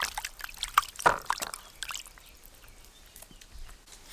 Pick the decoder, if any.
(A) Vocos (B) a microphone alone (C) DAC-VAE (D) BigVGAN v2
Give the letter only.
B